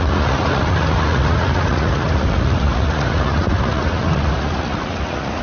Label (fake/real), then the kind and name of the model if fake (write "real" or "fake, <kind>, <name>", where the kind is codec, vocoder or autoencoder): fake, vocoder, Vocos